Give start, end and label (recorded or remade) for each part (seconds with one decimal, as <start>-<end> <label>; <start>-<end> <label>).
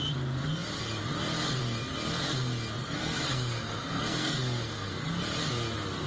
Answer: 0.0-2.8 recorded; 2.8-5.1 remade; 5.1-6.1 recorded